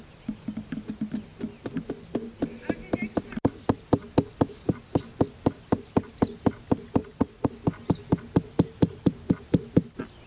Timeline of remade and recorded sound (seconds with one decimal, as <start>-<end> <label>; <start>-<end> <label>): 0.0-7.0 recorded; 7.0-7.5 remade; 7.5-10.3 recorded